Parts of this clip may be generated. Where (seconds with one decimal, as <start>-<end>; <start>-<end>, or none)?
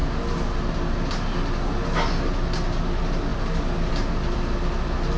none